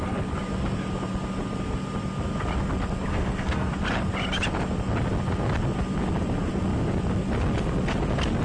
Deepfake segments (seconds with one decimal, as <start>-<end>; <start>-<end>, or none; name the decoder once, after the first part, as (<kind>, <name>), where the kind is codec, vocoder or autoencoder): 3.1-3.7 (codec, SNAC)